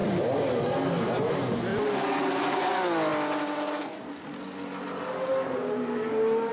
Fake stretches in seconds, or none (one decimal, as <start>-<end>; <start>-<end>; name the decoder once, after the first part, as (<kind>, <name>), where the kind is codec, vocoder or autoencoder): 0.0-0.8 (vocoder, BigVGAN v2); 1.7-2.4